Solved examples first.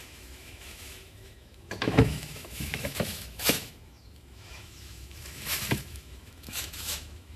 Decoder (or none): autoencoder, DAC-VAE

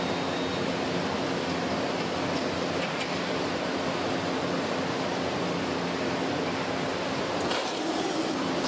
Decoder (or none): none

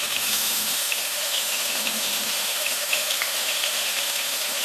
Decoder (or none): autoencoder, DAC-VAE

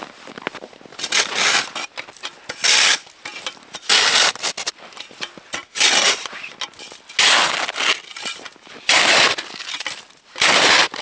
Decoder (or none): none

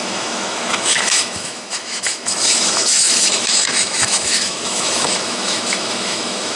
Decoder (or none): autoencoder, DAC-VAE